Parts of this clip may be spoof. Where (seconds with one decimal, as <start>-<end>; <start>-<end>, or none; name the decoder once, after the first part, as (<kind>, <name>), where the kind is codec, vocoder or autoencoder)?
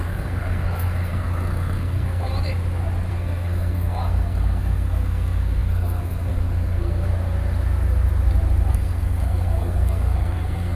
0.0-2.3 (codec, SNAC); 3.1-7.1; 8.7-10.8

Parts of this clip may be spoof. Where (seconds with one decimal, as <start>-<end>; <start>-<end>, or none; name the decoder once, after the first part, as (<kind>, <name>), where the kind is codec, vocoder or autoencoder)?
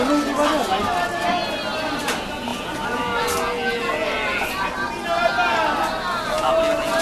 none